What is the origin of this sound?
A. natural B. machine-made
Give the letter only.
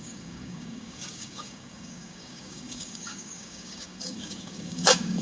B